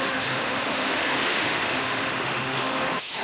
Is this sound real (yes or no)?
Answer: no